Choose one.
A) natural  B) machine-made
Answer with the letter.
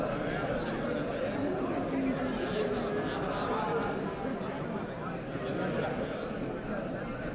A